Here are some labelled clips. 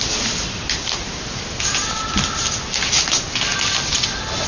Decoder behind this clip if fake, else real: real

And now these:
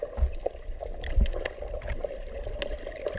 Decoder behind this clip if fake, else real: real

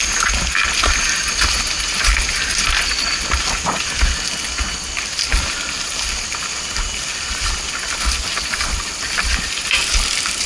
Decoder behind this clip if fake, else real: real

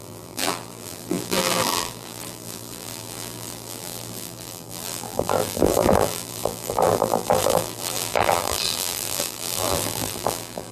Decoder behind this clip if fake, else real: fake, vocoder, BigVGAN v2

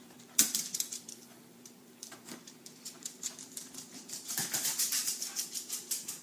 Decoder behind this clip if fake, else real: fake, vocoder, BigVGAN v2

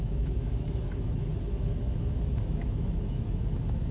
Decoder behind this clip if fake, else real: fake, autoencoder, DAC-VAE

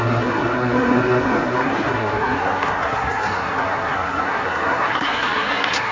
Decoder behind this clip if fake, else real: fake, codec, SNAC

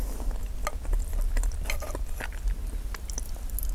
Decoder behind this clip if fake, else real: real